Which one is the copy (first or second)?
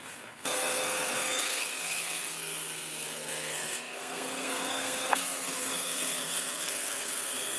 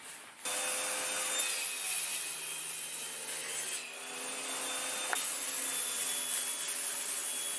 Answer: first